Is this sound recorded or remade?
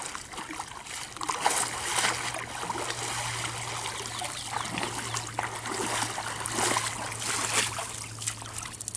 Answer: recorded